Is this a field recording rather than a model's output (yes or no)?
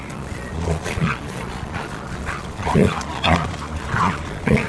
no